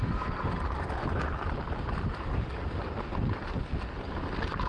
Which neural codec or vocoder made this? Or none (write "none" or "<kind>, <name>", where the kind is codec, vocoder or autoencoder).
none